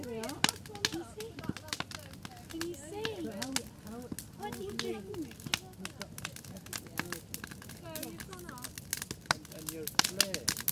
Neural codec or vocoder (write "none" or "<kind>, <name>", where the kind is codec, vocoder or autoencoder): none